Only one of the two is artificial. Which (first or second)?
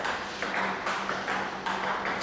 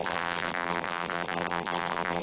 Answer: second